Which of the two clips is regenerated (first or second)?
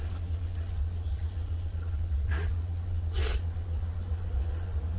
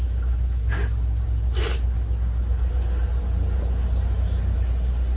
first